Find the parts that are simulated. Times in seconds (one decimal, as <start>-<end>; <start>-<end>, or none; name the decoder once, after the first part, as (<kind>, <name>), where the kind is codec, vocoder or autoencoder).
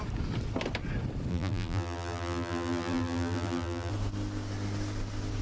1.3-3.9 (vocoder, BigVGAN v2)